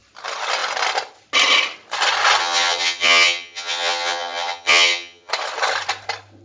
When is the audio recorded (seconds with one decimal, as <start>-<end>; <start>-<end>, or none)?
0.0-2.4; 5.3-6.4